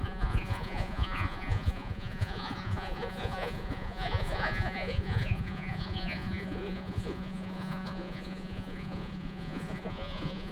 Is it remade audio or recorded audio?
remade